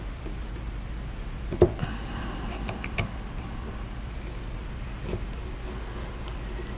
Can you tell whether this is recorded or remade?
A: recorded